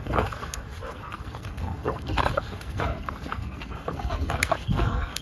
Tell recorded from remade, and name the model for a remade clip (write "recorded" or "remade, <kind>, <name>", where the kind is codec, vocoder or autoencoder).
remade, codec, SNAC